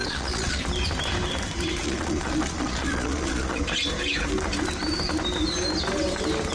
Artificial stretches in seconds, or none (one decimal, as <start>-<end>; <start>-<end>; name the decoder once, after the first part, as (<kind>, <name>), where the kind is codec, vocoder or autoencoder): 0.0-0.6 (vocoder, Vocos); 1.8-3.6